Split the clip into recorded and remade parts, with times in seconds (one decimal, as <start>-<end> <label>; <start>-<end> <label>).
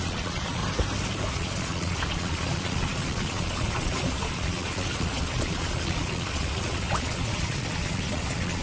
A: 0.0-0.6 remade; 0.6-1.3 recorded; 1.3-8.6 remade